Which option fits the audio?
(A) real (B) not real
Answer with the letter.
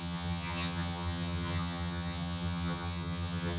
B